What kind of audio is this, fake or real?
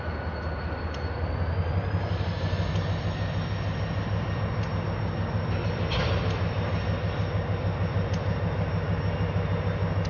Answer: real